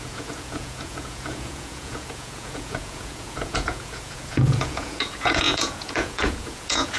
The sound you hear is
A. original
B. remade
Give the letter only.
B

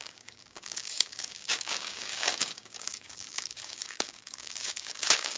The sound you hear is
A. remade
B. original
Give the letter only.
A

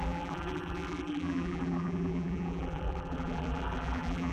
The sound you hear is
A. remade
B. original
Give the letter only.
A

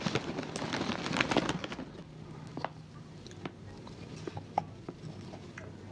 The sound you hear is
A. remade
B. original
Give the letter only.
B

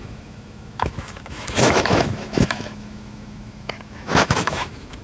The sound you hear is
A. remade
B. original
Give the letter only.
A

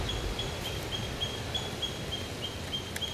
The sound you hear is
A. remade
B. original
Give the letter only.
B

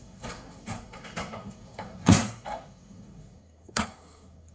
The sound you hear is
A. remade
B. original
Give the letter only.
A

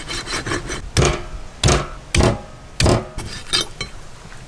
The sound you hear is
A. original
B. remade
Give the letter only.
A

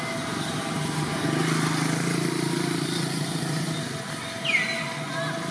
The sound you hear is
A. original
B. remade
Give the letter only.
A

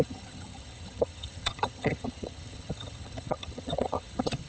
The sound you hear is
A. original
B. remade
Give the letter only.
B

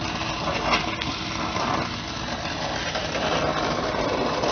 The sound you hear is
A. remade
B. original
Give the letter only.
B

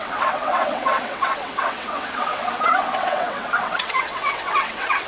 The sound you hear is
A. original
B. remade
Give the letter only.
B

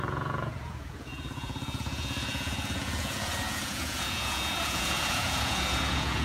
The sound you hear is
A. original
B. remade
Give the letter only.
B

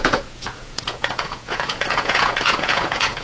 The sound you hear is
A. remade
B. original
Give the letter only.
A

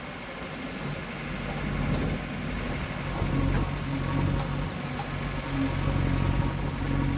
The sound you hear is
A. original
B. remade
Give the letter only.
A